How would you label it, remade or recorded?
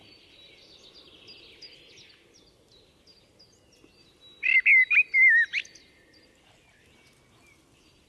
recorded